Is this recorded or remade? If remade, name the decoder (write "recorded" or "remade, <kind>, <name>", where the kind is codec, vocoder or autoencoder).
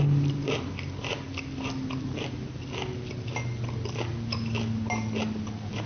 recorded